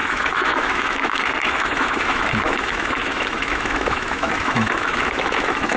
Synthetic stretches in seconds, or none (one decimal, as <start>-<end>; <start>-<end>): 0.0-5.8